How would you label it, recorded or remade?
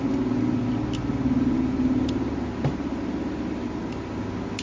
recorded